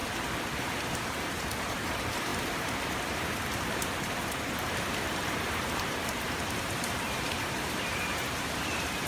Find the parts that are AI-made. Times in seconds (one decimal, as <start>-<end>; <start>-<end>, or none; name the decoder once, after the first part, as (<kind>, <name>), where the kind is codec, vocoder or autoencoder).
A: 0.6-9.1 (vocoder, BigVGAN v2)